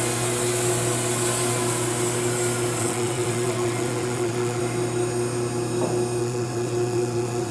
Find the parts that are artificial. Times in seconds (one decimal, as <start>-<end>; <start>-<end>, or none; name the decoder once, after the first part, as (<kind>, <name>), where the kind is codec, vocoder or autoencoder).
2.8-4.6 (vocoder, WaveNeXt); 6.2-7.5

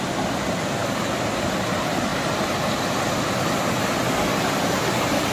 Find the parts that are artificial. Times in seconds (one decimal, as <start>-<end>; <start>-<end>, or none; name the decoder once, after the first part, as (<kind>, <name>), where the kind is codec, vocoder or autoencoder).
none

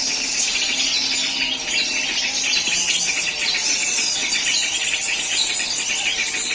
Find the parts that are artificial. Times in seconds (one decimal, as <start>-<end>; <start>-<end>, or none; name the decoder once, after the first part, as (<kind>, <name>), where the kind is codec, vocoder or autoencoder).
none

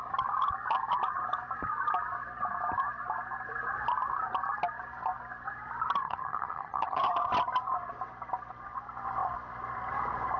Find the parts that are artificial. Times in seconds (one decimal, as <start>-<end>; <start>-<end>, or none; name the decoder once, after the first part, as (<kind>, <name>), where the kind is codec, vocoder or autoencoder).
6.0-7.0 (vocoder, HiFi-GAN)

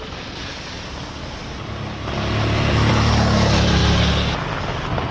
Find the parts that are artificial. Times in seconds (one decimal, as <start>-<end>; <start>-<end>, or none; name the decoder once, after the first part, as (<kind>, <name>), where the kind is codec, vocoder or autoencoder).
none